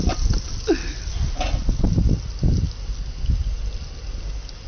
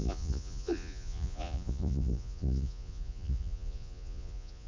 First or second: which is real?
first